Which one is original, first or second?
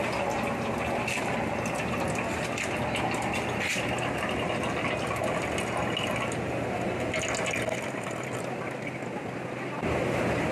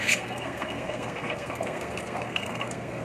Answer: first